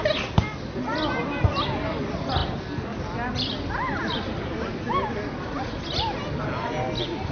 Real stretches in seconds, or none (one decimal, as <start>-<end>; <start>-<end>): 0.0-7.3